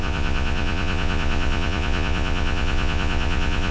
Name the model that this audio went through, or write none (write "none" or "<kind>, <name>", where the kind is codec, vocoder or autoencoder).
vocoder, Vocos